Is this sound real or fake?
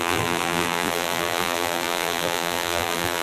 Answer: fake